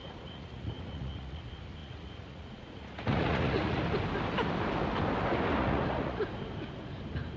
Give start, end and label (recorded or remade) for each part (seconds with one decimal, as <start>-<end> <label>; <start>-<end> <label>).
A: 0.0-1.4 remade; 1.4-1.8 recorded; 1.8-3.8 remade; 3.8-5.6 recorded; 5.6-6.2 remade; 6.2-7.4 recorded

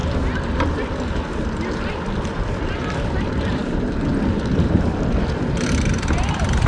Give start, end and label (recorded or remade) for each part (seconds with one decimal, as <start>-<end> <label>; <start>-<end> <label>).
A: 0.0-6.7 remade

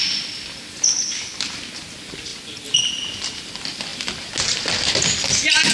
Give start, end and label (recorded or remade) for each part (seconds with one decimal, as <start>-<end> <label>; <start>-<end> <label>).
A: 0.0-5.7 recorded

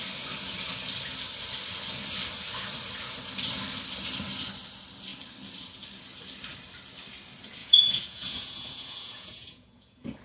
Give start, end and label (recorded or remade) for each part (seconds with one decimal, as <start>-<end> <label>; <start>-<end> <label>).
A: 0.0-7.6 recorded; 7.6-10.2 remade

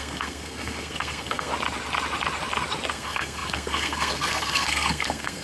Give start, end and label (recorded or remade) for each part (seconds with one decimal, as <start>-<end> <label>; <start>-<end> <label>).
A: 0.0-1.5 remade; 1.5-2.9 recorded; 2.9-5.4 remade

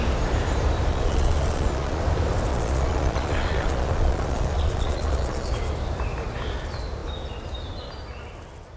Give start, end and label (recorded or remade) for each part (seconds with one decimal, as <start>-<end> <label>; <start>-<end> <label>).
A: 0.0-0.9 recorded; 0.9-2.0 remade; 2.0-2.5 recorded; 2.5-5.5 remade; 5.5-8.8 recorded

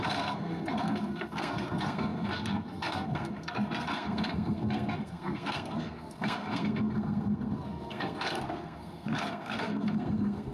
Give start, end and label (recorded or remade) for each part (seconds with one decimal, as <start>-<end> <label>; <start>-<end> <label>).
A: 0.0-10.5 remade